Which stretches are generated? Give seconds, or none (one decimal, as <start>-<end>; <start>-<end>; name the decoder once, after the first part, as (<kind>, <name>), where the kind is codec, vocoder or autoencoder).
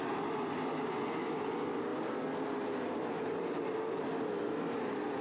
none